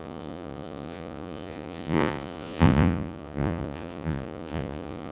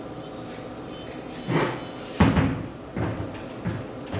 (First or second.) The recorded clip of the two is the second